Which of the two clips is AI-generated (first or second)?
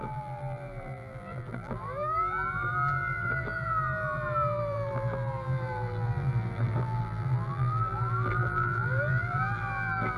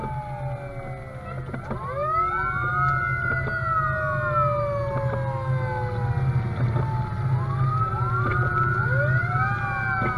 first